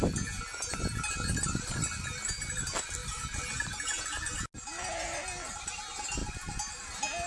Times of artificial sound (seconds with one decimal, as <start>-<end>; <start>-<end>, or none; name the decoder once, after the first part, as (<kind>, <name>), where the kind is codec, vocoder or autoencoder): 3.0-3.5 (vocoder, BigVGAN v2); 6.2-6.7